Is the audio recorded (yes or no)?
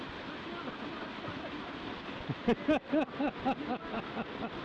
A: yes